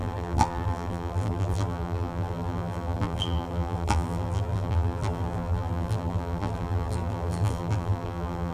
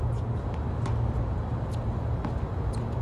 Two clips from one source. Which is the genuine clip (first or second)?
second